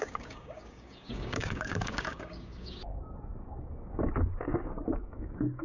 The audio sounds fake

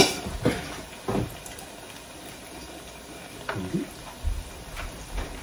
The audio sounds real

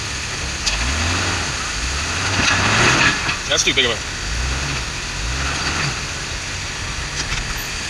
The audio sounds real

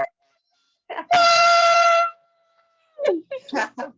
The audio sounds fake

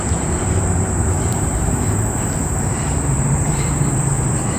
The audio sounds fake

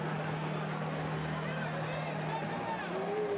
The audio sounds real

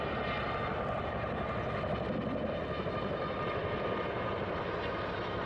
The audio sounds real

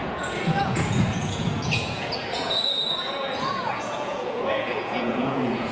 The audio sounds fake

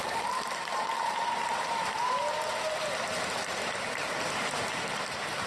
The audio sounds fake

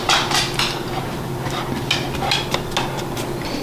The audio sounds real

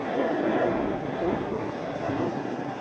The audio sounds fake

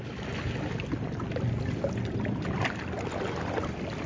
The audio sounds real